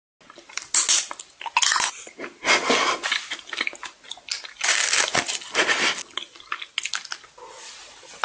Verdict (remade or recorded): recorded